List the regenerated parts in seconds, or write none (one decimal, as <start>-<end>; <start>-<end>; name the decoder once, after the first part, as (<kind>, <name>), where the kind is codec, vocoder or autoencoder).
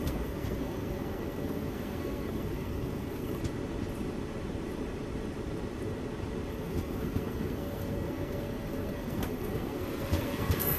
0.0-3.4 (codec, SNAC); 6.5-10.8